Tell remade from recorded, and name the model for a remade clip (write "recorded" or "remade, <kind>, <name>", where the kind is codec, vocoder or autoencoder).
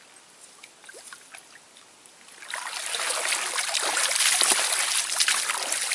recorded